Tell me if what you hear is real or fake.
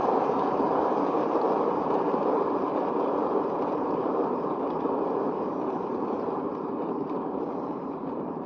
fake